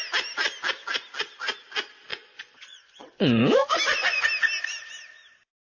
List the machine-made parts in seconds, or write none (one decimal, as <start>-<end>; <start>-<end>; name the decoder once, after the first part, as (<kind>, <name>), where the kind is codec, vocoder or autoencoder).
2.1-4.2 (vocoder, Vocos)